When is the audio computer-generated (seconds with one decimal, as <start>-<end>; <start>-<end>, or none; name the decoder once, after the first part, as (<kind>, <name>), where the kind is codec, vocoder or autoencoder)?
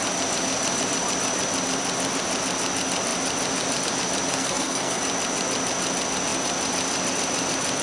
4.3-5.0 (codec, SNAC)